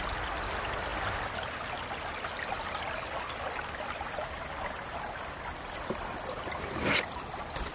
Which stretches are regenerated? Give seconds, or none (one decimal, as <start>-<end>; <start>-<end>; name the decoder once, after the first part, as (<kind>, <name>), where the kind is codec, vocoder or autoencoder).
none

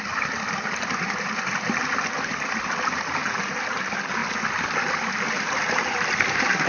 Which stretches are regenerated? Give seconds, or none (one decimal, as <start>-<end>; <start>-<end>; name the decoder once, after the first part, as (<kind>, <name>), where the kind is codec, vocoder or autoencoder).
0.0-3.2 (vocoder, BigVGAN v2); 3.8-6.7

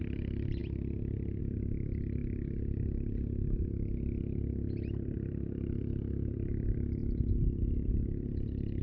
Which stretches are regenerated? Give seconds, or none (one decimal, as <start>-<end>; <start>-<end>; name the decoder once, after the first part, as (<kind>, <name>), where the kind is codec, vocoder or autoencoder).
0.0-0.6 (vocoder, BigVGAN v2); 1.4-2.2; 4.2-7.0; 7.6-8.8

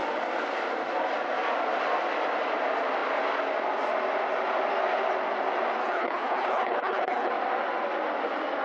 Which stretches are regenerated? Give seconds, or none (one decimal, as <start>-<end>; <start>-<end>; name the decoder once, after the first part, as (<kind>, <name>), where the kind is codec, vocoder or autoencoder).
5.8-7.3 (codec, HILCodec)

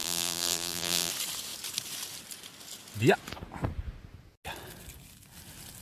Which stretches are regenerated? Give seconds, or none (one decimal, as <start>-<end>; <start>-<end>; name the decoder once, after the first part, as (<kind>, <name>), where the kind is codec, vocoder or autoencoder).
0.0-1.1 (vocoder, BigVGAN v2)

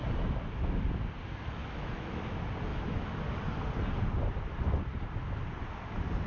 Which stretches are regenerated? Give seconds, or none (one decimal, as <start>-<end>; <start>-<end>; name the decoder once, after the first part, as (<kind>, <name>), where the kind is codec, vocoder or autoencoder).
1.6-2.2 (autoencoder, DAC-VAE); 2.7-3.2